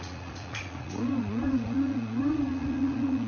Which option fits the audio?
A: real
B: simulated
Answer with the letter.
B